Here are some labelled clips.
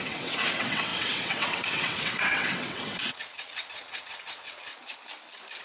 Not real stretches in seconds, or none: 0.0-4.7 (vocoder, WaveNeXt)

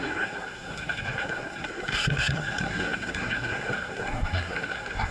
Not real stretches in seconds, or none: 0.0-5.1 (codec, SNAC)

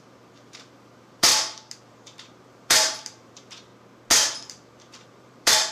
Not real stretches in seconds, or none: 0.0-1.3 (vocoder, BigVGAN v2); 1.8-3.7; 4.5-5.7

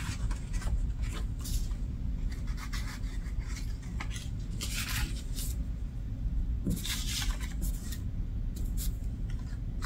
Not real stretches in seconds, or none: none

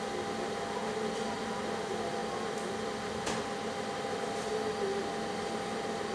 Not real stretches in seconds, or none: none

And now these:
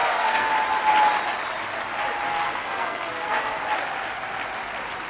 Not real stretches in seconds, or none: 0.0-0.5 (codec, SNAC); 2.3-3.6

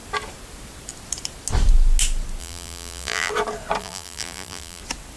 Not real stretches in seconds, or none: 2.4-3.3 (vocoder, BigVGAN v2); 3.8-4.8